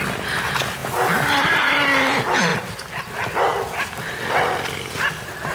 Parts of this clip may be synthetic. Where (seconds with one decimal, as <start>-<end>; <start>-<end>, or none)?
none